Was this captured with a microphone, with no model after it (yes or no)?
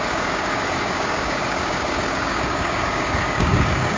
no